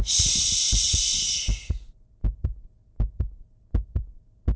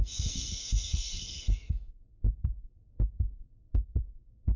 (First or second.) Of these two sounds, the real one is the first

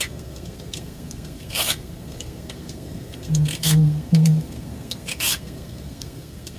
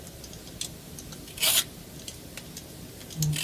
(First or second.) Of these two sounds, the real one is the second